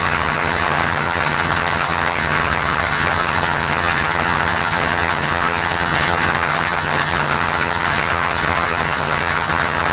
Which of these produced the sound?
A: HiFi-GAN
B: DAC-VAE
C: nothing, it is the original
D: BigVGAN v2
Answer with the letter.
A